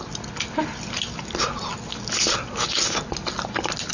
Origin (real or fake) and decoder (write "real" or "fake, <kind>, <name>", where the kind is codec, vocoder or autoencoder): real